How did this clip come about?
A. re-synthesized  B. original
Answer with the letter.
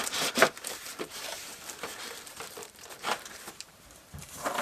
A